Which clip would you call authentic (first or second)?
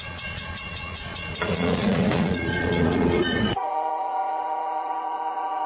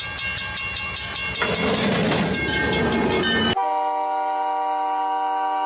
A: second